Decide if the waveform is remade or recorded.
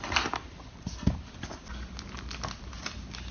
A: recorded